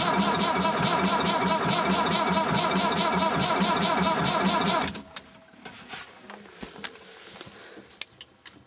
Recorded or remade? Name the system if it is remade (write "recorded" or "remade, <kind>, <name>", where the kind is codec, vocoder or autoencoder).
recorded